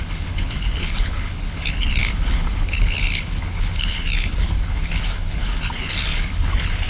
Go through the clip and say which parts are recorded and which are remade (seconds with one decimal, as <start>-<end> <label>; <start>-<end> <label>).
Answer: 0.0-6.9 remade